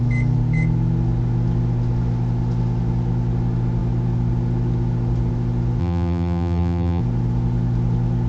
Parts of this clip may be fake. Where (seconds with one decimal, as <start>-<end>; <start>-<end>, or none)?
5.8-7.0